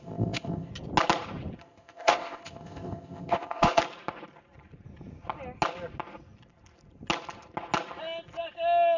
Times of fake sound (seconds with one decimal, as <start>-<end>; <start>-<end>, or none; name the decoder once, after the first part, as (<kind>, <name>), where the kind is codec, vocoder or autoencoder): 0.0-0.7 (codec, ZipCodec); 1.6-3.8